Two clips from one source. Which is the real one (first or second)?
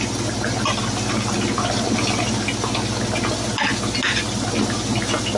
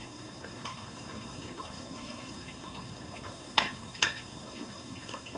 first